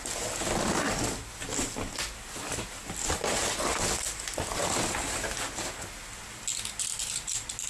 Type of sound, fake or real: real